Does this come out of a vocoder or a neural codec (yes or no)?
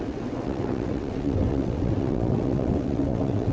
yes